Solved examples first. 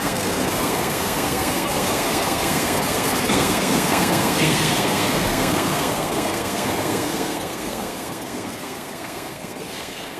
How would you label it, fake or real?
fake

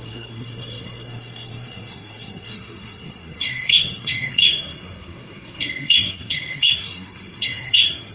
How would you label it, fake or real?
fake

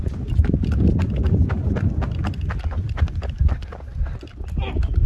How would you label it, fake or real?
real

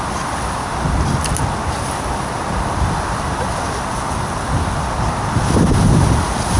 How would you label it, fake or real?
real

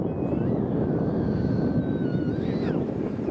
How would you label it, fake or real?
real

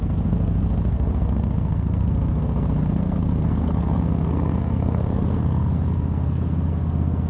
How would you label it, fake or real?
fake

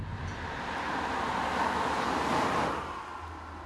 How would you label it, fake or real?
real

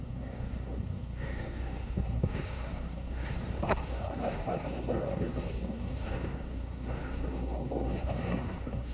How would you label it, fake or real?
fake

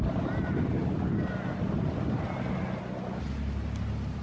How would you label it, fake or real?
real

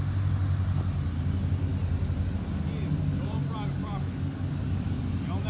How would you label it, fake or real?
real